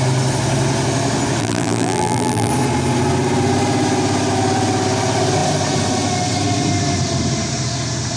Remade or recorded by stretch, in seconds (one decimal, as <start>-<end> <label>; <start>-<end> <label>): 0.0-1.4 recorded; 1.4-2.5 remade; 2.5-8.2 recorded